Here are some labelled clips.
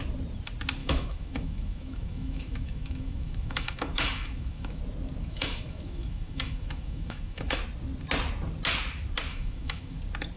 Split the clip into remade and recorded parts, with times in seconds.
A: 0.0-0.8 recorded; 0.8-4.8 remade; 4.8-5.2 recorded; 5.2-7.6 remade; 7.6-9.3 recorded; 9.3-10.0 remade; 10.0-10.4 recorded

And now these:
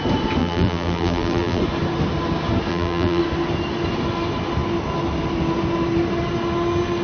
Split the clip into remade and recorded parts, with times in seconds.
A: 0.0-0.4 recorded; 0.4-1.6 remade; 1.6-2.7 recorded; 2.7-3.2 remade; 3.2-7.0 recorded

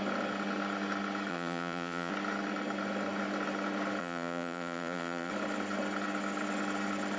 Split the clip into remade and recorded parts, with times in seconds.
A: 0.0-1.3 recorded; 1.3-2.1 remade; 2.1-4.0 recorded; 4.0-5.3 remade; 5.3-7.2 recorded

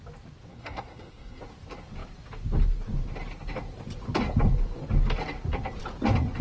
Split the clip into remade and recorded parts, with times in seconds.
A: 0.0-0.5 recorded; 0.5-1.4 remade; 1.4-6.4 recorded

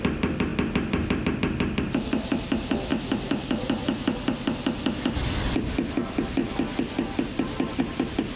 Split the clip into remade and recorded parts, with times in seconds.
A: 0.0-0.5 remade; 0.5-1.8 recorded; 1.8-8.4 remade

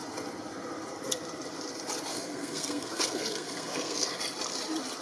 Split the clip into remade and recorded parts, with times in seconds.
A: 0.0-2.1 recorded; 2.1-4.2 remade; 4.2-5.0 recorded

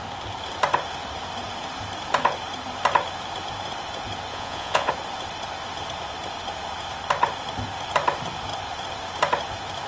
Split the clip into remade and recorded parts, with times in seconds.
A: 0.0-4.3 recorded; 4.3-4.9 remade; 4.9-9.9 recorded